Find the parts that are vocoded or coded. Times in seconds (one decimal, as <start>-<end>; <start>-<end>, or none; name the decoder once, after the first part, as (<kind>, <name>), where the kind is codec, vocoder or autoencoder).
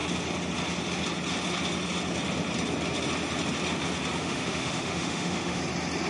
4.2-5.6 (autoencoder, DAC-VAE)